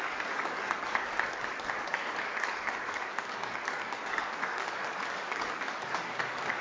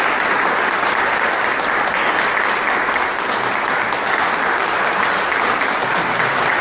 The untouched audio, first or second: second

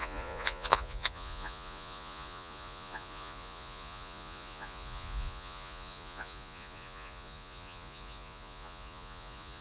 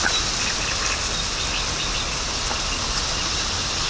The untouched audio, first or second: second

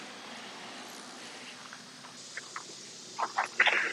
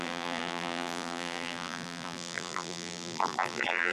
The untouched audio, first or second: first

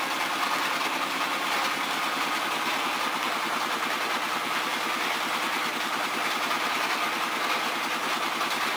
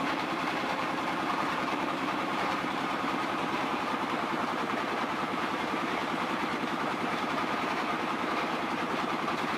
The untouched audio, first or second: first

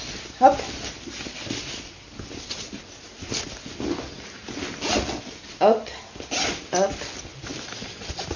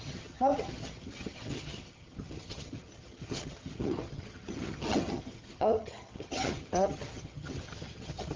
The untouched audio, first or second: first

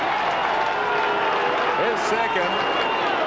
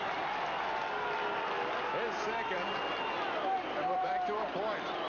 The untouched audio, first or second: first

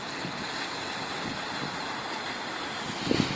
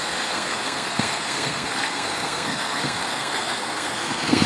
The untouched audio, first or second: first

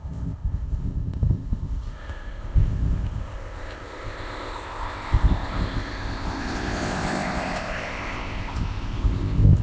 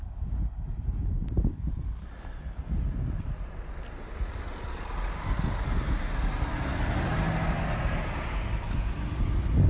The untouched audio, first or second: second